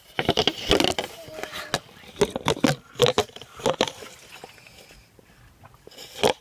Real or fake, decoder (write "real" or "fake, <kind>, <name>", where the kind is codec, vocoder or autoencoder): real